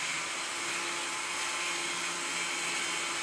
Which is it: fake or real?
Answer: real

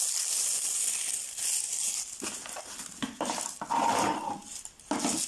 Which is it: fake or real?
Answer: real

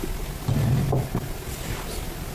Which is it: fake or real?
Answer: real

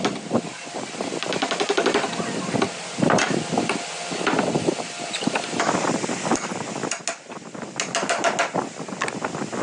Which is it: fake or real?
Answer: real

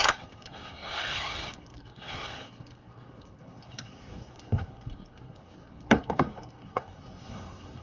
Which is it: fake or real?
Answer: fake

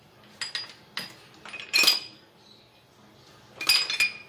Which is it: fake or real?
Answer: real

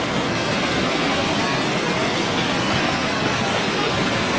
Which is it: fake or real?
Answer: fake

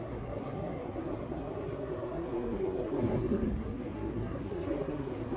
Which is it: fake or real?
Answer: fake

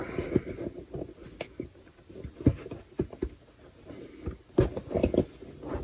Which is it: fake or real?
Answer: real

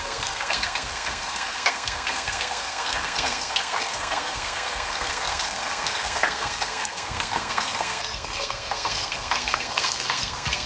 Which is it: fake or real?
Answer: fake